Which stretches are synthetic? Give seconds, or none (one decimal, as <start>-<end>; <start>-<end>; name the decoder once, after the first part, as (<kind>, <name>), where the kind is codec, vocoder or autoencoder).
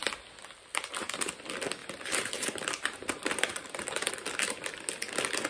0.7-1.3 (vocoder, BigVGAN v2); 1.8-4.1